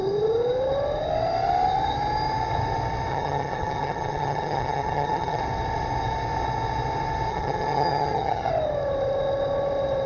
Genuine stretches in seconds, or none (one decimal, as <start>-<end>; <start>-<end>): 0.0-3.1; 5.4-7.3; 8.5-10.1